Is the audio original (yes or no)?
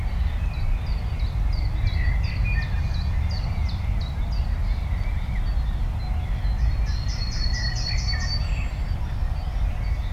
yes